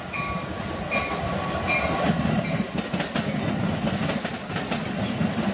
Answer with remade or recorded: recorded